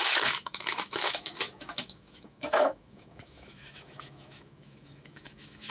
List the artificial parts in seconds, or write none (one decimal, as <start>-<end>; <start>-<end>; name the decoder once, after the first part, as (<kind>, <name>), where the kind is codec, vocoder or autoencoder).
0.0-5.7 (autoencoder, DAC-VAE)